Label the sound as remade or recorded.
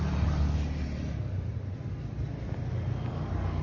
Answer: recorded